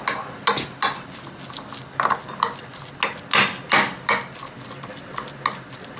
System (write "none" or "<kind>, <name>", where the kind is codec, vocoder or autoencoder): none